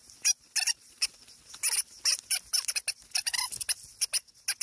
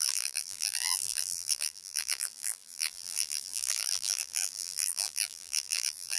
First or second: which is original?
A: first